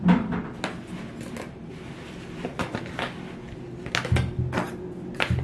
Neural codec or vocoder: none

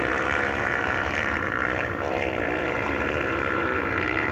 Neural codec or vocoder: vocoder, BigVGAN v2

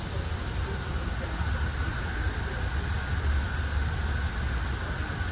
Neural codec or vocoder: none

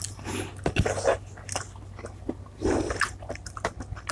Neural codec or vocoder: none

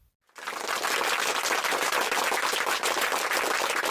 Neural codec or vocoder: none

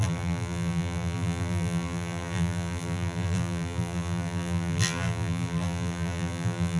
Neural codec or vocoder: vocoder, BigVGAN v2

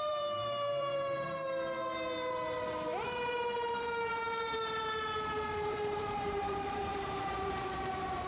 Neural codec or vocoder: vocoder, BigVGAN v2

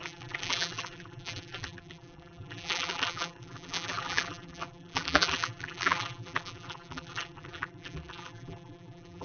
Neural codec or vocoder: vocoder, BigVGAN v2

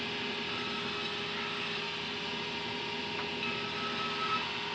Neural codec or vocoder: none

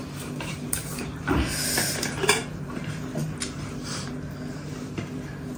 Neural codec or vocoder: vocoder, BigVGAN v2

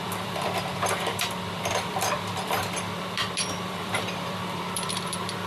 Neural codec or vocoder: vocoder, BigVGAN v2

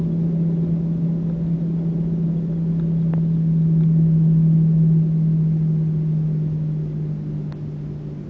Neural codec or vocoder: none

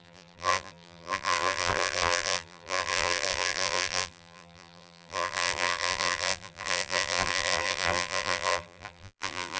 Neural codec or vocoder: vocoder, BigVGAN v2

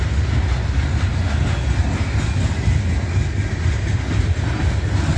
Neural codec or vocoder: none